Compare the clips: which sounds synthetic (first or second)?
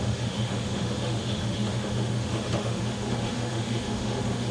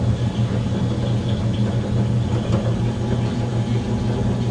first